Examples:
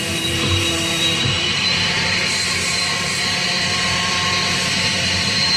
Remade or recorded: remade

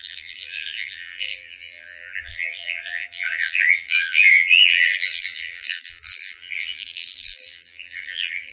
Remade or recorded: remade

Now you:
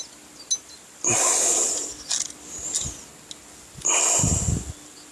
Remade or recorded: recorded